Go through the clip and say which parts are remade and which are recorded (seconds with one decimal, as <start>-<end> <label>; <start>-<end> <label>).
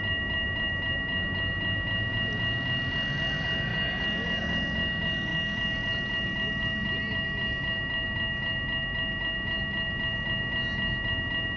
0.0-11.6 recorded